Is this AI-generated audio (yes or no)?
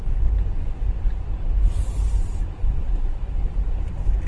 no